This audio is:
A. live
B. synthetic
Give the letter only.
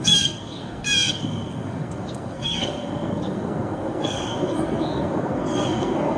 B